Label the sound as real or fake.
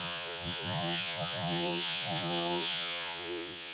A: fake